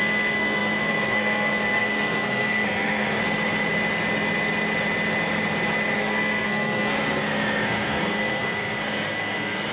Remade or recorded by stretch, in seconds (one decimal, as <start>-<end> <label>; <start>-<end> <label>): 0.0-3.2 remade; 3.2-6.0 recorded; 6.0-9.7 remade